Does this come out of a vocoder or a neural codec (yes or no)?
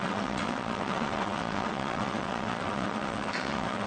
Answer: yes